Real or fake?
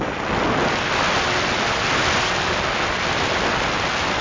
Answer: real